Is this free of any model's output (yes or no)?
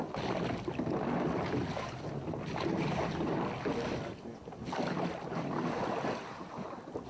yes